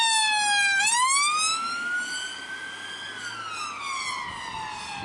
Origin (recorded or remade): recorded